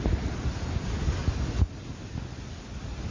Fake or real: real